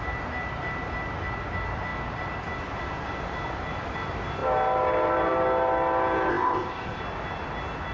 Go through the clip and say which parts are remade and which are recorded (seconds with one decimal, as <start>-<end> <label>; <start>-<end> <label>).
0.0-6.3 recorded; 6.3-7.0 remade; 7.0-7.9 recorded